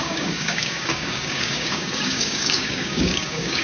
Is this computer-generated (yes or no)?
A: yes